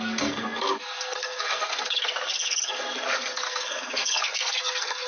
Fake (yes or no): yes